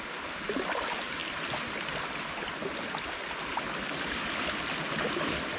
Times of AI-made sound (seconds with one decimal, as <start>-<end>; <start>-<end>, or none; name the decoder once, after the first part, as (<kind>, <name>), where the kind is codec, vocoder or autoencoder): none